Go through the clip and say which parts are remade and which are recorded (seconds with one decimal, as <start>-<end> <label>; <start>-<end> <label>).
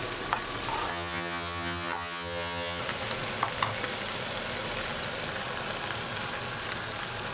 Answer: 0.0-0.9 recorded; 0.9-2.8 remade; 2.8-7.3 recorded